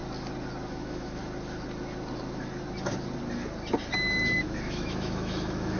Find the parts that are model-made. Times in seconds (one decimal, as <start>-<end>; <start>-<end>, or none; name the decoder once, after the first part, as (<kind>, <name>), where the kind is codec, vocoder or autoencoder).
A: 0.7-1.2 (autoencoder, DAC-VAE); 4.3-5.8